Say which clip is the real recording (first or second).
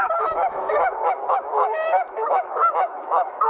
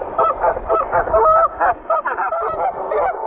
second